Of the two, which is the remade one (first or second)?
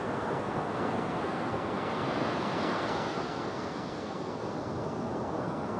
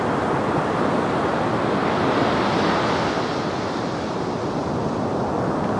first